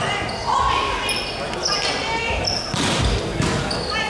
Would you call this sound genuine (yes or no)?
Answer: yes